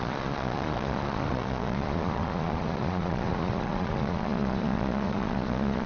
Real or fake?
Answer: fake